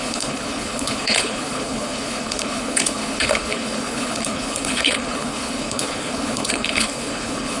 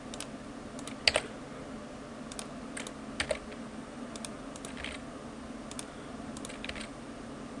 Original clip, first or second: second